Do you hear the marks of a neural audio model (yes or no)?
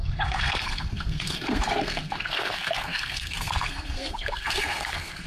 yes